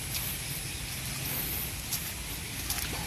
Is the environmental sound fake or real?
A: real